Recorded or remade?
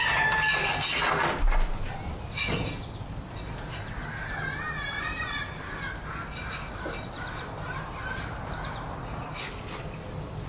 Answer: recorded